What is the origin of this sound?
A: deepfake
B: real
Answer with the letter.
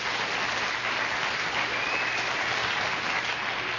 B